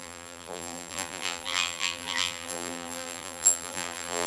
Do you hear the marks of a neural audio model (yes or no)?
yes